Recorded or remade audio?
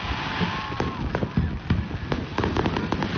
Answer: recorded